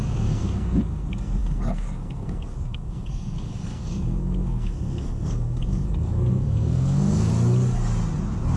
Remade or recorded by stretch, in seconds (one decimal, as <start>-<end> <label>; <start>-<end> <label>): 0.0-7.3 remade; 7.3-8.6 recorded